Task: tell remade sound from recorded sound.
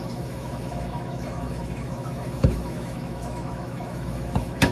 remade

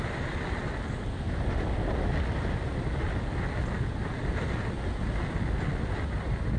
recorded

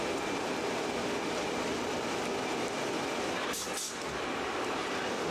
recorded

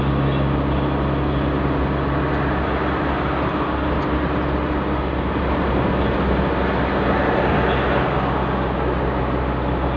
recorded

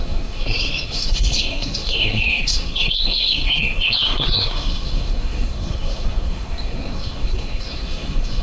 remade